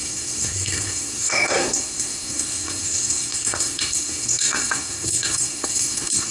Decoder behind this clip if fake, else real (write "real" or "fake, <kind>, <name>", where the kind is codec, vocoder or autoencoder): fake, codec, SNAC